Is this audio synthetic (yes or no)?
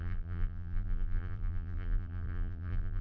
yes